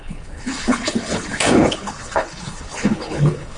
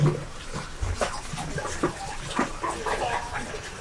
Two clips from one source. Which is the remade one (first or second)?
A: first